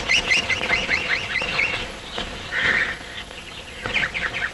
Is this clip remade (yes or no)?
yes